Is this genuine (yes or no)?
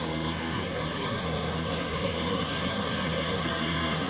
no